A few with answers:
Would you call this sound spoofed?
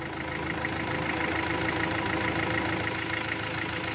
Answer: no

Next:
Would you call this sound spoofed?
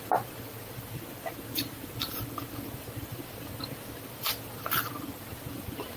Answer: yes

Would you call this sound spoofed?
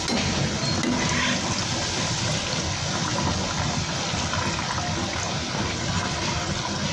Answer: no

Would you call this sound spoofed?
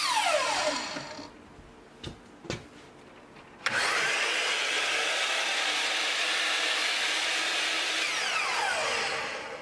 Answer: no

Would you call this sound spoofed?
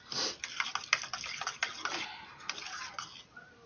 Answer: no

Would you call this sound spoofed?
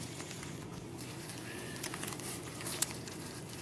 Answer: yes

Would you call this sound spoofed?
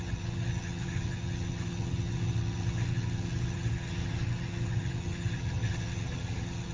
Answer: yes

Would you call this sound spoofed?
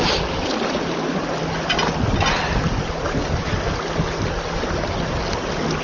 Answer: no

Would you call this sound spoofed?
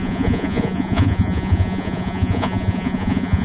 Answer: yes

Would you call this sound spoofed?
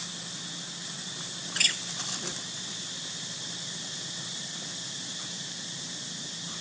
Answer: no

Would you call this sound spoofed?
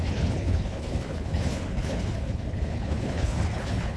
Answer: yes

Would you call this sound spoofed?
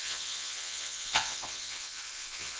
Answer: yes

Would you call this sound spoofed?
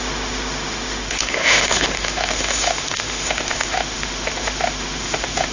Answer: yes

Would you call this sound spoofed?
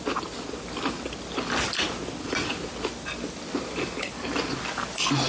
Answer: no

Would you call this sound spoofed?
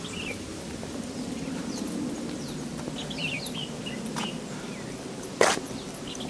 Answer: no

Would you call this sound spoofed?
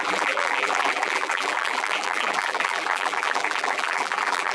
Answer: yes